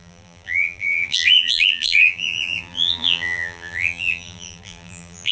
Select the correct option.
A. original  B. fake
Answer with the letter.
B